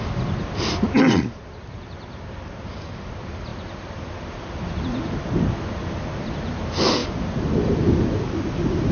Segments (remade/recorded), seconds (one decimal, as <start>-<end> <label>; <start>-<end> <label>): 0.0-8.9 recorded